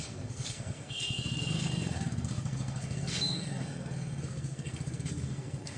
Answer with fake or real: fake